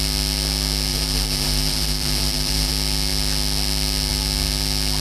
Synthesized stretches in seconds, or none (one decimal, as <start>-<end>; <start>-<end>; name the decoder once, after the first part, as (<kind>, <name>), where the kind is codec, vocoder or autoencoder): 0.9-2.7 (vocoder, BigVGAN v2)

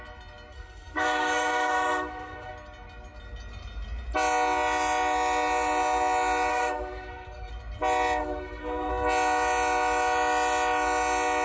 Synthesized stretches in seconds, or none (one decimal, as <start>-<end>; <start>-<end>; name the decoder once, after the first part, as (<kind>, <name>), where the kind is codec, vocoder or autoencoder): 0.5-2.5 (codec, SNAC); 6.5-7.5; 8.2-8.9